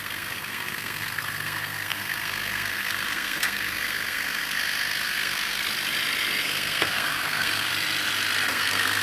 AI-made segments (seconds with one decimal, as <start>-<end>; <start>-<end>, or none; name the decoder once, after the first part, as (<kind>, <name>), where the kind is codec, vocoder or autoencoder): 0.0-5.6 (codec, SNAC); 6.4-7.7; 8.5-9.0

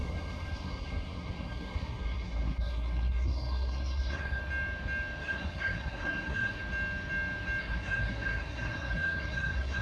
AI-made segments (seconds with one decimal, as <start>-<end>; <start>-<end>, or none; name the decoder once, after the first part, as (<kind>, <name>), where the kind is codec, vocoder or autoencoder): 0.0-4.4 (codec, SNAC); 5.2-6.6; 7.6-9.8

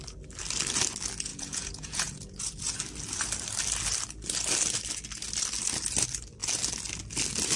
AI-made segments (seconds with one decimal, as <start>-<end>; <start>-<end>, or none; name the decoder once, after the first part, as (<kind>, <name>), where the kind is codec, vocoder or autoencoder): 1.3-2.8 (vocoder, Vocos)

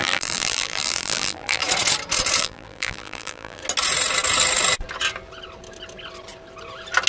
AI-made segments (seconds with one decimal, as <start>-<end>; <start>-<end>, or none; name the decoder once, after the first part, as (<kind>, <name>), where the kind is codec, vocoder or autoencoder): 0.0-1.6 (vocoder, BigVGAN v2); 2.4-3.6

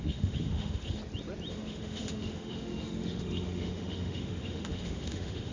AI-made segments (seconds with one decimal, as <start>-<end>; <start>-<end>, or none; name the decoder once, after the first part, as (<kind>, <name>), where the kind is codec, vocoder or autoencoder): 0.0-1.0 (autoencoder, DAC-VAE); 1.5-5.5

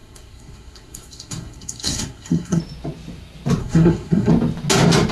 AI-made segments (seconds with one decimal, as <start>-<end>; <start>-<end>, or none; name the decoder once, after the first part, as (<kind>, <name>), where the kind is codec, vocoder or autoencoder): 0.0-2.6 (codec, SNAC); 3.6-4.3